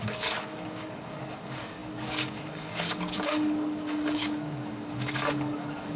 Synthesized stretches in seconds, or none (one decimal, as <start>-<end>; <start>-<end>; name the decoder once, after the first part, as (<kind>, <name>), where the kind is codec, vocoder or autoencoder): 0.0-6.0 (codec, DAC)